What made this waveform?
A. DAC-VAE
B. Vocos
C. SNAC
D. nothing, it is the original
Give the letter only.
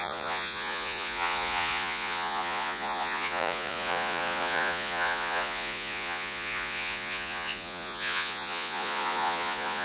B